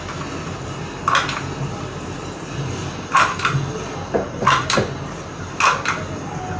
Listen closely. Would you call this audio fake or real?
real